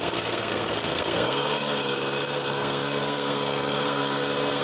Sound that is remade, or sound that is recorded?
remade